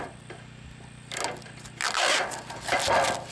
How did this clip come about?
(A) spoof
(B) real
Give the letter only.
B